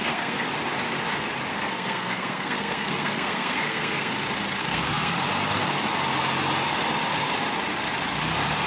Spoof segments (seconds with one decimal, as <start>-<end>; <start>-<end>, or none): 0.0-0.5; 1.5-4.1; 4.6-5.1